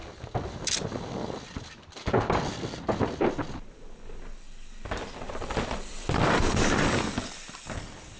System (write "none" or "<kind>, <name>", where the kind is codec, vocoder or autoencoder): none